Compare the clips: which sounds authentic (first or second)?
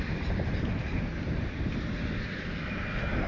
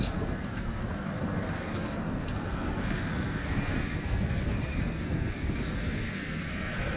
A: first